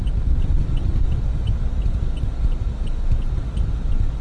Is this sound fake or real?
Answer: real